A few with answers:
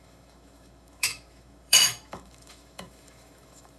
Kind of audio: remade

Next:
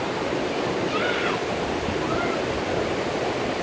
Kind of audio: recorded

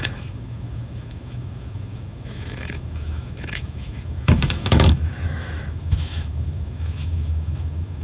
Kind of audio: remade